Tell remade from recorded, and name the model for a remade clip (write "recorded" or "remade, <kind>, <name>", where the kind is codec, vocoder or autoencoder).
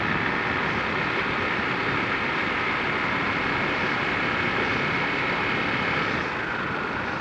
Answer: recorded